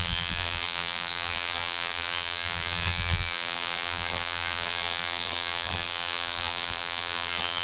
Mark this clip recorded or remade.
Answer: remade